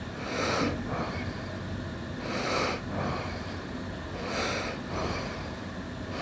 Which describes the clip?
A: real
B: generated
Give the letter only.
A